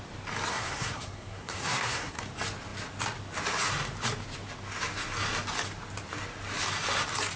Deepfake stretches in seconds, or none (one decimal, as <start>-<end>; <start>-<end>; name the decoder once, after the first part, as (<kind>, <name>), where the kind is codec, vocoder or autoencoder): 0.5-2.2 (codec, SNAC)